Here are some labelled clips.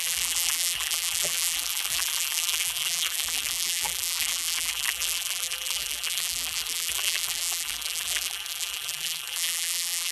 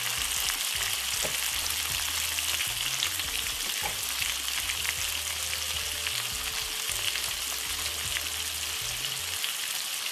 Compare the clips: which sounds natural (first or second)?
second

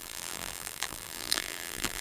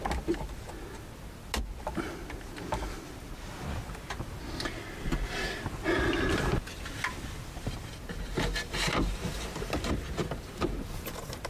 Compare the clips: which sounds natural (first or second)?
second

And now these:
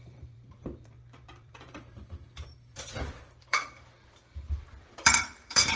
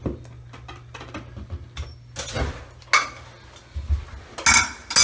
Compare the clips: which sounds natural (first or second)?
second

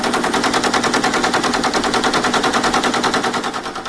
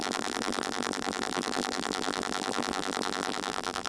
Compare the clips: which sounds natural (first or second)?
first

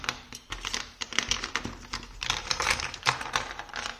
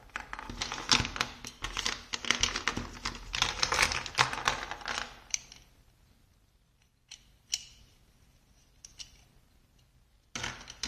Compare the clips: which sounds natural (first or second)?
second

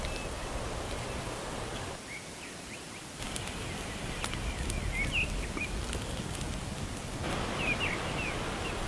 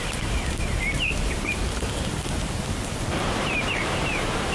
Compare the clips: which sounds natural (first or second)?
first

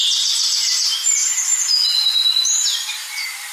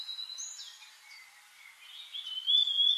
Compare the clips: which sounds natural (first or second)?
second